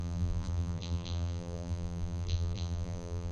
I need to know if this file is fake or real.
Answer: fake